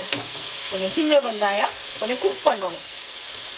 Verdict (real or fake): fake